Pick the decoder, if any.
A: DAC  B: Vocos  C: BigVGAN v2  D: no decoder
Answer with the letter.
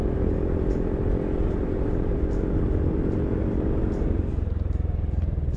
C